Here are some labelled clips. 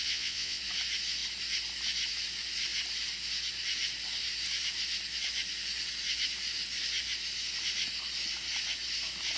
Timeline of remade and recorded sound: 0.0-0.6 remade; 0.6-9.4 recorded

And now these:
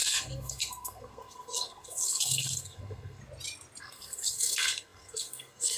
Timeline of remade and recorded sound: 0.0-3.2 remade; 3.2-3.8 recorded; 3.8-5.8 remade

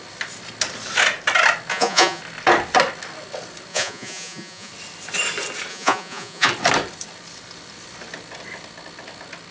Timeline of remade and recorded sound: 0.0-1.7 recorded; 1.7-2.2 remade; 2.2-3.7 recorded; 3.7-4.7 remade; 4.7-5.7 recorded; 5.7-6.5 remade; 6.5-9.5 recorded